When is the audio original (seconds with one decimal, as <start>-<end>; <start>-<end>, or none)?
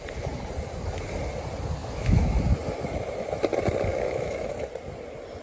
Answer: 0.0-1.8; 2.4-3.9; 4.5-5.4